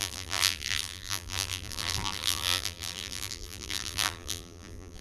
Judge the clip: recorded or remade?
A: remade